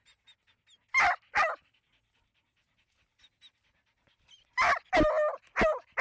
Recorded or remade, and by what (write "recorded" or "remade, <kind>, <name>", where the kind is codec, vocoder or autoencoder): recorded